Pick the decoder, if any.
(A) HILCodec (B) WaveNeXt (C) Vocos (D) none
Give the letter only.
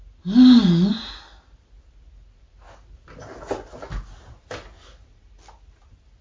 D